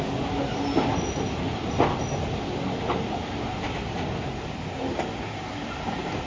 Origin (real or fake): real